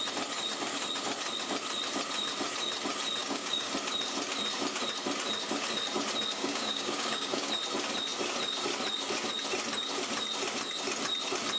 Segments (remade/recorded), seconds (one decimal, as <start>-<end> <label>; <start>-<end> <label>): 0.0-3.2 recorded; 3.2-3.7 remade; 3.7-6.4 recorded; 6.4-7.5 remade; 7.5-11.6 recorded